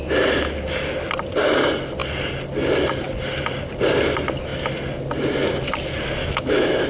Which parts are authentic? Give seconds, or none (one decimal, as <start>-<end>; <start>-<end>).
0.0-6.2